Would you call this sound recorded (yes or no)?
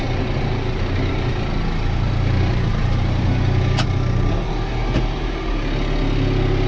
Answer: yes